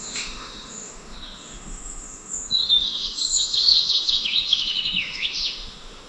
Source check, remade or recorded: remade